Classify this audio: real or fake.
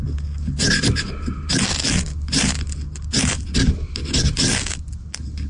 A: real